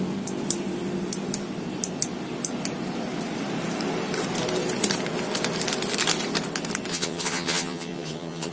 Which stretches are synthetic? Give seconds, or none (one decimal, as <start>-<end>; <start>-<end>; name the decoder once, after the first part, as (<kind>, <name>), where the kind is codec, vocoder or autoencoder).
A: 6.9-8.5 (vocoder, HiFi-GAN)